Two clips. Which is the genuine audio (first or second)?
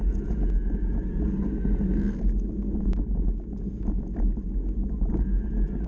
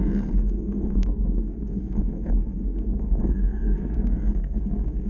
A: first